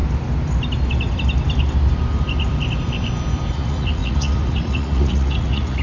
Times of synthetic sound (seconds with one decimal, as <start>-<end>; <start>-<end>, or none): 3.5-5.8